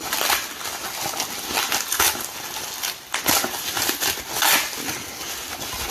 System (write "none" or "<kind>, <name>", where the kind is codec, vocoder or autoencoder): none